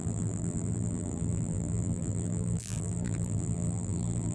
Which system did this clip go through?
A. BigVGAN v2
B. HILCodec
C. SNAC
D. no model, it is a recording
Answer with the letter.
A